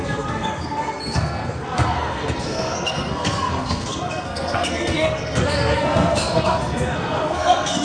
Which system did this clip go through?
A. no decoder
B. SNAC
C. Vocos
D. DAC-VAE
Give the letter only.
B